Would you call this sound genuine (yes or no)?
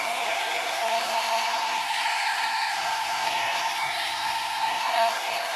no